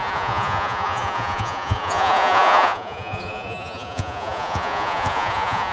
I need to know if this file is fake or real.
fake